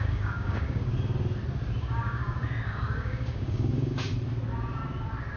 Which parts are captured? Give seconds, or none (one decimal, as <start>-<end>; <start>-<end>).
0.9-1.8; 4.1-5.4